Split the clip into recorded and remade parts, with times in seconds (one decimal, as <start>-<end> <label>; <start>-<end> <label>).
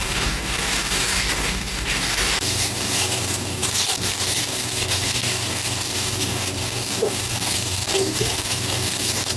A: 0.0-9.4 remade